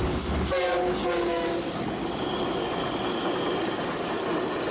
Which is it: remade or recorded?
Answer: recorded